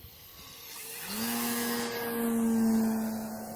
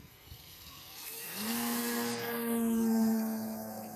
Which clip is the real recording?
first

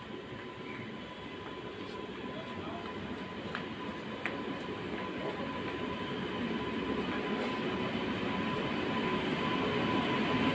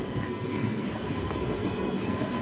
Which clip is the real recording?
first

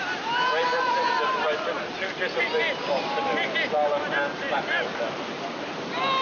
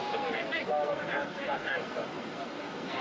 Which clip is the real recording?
first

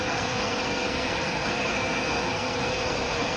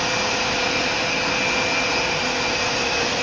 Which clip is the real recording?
second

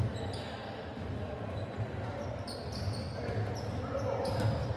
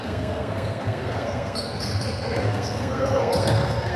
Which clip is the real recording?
first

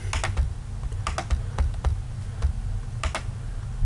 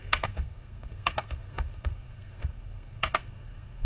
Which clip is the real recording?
first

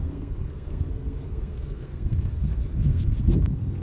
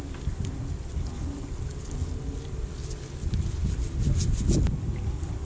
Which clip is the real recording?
second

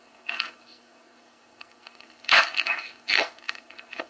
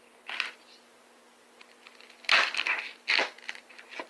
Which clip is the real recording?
second